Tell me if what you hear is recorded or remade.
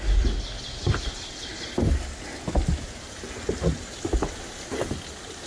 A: recorded